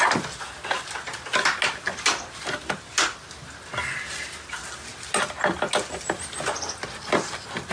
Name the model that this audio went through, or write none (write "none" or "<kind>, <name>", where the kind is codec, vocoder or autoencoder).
none